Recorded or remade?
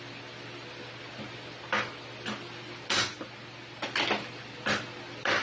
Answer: recorded